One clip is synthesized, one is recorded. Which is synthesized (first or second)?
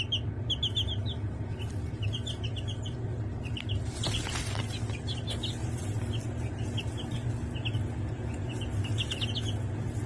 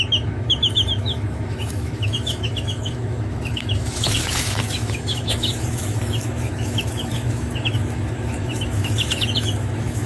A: second